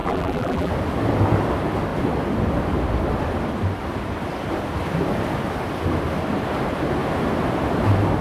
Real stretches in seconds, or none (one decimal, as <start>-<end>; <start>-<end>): 0.7-8.2